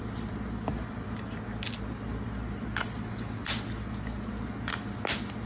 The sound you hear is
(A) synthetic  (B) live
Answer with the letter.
B